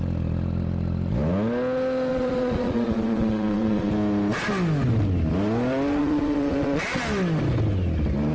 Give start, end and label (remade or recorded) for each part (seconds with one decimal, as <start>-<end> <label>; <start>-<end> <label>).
0.0-2.1 recorded; 2.1-3.9 remade; 3.9-6.0 recorded; 6.0-7.0 remade; 7.0-8.3 recorded